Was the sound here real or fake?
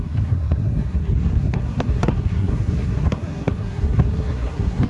fake